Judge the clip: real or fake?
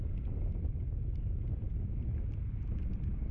real